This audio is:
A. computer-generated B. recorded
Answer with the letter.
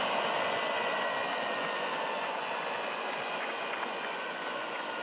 A